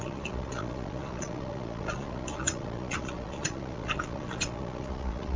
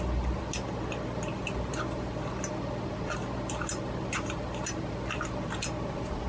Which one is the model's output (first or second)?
first